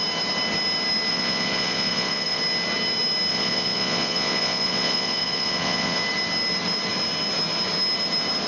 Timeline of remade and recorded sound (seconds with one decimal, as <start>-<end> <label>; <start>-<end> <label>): 0.0-1.1 recorded; 1.1-2.4 remade; 2.4-3.3 recorded; 3.3-6.0 remade; 6.0-8.5 recorded